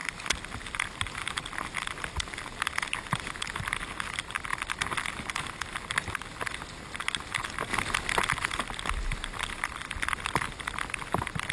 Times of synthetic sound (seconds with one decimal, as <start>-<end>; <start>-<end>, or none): none